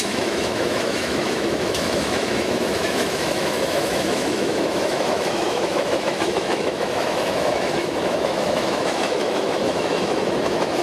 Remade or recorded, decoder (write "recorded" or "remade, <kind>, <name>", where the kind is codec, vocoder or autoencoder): remade, autoencoder, DAC-VAE